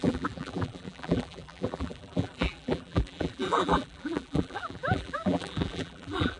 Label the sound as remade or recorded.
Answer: remade